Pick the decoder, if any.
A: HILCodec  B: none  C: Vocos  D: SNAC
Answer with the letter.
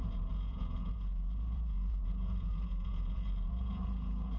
C